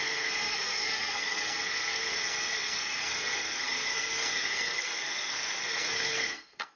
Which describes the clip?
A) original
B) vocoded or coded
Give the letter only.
B